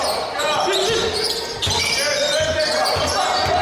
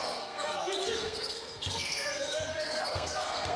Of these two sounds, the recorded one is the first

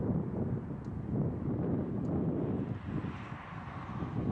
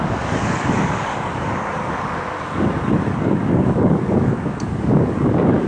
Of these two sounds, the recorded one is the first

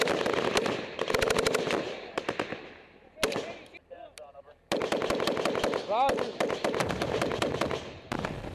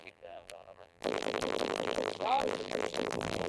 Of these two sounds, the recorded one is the first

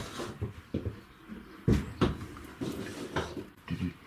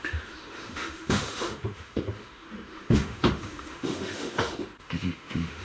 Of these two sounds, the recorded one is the first